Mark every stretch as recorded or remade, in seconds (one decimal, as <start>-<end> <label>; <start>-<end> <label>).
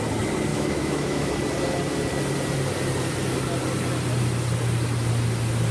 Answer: 0.0-0.5 recorded; 0.5-1.3 remade; 1.3-5.7 recorded